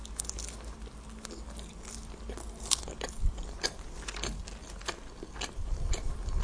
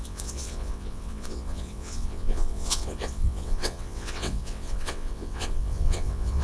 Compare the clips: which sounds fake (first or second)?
second